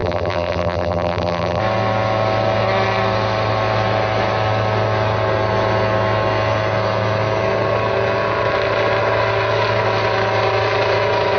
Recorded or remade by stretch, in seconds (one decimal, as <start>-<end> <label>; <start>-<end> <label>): 0.0-1.6 remade; 1.6-11.4 recorded

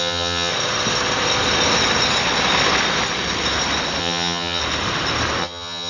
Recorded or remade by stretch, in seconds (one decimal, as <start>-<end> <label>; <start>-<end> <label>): 0.0-0.5 remade; 0.5-4.0 recorded; 4.0-4.6 remade; 4.6-5.4 recorded; 5.4-5.9 remade

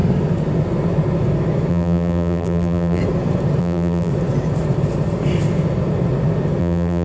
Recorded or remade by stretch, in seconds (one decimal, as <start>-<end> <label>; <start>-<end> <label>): 0.0-1.7 recorded; 1.7-3.0 remade; 3.0-3.6 recorded; 3.6-4.1 remade; 4.1-6.6 recorded; 6.6-7.0 remade

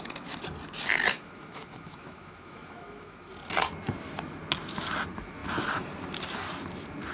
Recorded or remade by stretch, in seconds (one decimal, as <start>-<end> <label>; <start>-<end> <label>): 0.0-1.1 recorded; 1.1-3.3 remade; 3.3-7.1 recorded

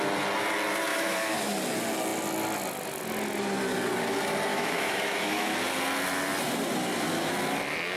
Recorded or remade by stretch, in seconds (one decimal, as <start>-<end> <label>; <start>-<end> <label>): 0.0-0.9 recorded; 0.9-1.5 remade; 1.5-4.5 recorded; 4.5-5.5 remade; 5.5-8.0 recorded

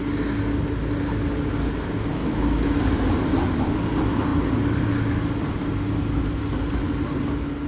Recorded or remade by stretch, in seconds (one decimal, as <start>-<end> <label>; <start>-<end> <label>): 0.0-2.2 recorded; 2.2-2.8 remade; 2.8-7.7 recorded

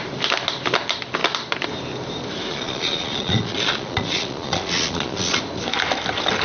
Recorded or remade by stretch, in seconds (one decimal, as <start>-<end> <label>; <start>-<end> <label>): 0.0-2.5 recorded; 2.5-5.4 remade; 5.4-6.4 recorded